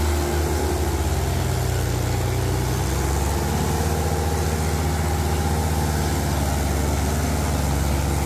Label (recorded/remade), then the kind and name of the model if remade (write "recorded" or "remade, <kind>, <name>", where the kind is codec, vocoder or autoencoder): recorded